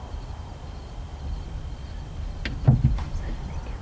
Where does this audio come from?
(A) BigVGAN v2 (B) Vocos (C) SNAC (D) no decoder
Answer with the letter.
A